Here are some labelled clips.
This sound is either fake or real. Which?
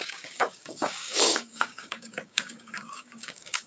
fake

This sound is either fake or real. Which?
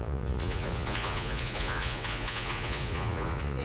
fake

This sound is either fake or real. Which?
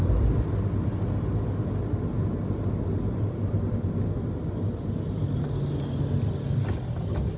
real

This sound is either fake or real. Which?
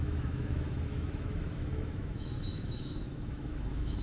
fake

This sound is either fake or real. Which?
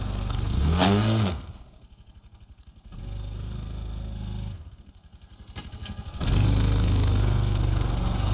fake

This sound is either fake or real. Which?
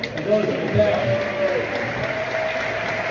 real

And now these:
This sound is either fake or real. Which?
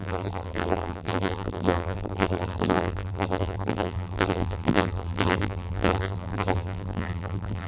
fake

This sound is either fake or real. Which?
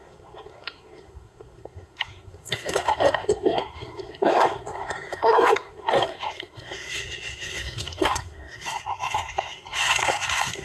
fake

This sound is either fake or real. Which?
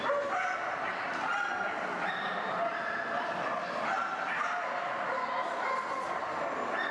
real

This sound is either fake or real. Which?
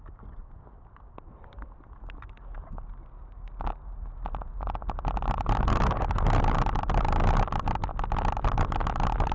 real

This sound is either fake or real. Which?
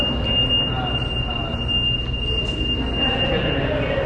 real